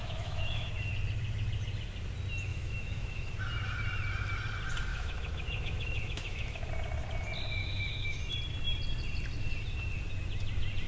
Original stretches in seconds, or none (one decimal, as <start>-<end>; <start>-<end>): 0.7-2.5; 3.3-4.9; 6.7-7.6; 8.2-10.9